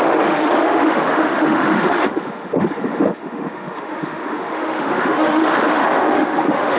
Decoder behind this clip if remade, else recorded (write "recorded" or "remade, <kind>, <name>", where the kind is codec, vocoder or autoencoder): remade, autoencoder, DAC-VAE